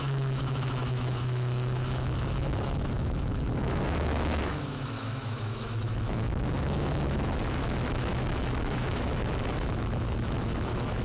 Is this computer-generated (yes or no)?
yes